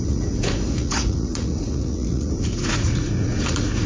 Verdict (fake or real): fake